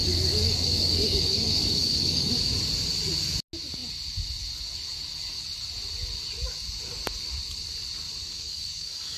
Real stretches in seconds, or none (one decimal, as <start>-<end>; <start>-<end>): 2.3-8.2